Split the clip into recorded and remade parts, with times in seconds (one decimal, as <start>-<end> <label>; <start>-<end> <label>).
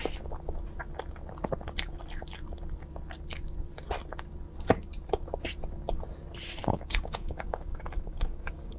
0.0-6.6 recorded; 6.6-8.8 remade